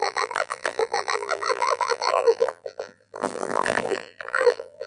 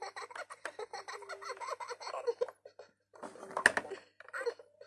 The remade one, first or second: first